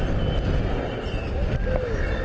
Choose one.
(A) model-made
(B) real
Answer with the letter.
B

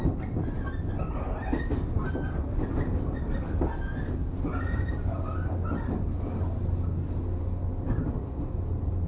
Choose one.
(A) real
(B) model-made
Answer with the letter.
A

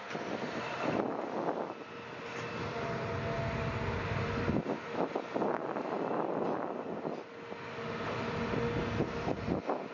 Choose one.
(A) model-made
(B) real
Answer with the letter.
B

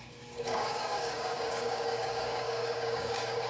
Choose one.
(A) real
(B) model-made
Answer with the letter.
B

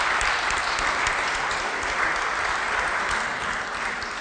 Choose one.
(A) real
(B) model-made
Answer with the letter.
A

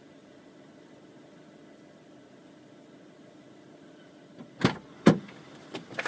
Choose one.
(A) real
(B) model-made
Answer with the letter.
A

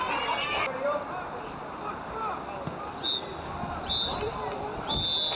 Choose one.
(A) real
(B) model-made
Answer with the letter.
A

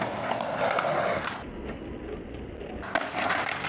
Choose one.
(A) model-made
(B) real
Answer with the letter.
B